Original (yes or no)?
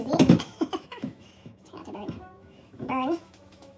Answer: no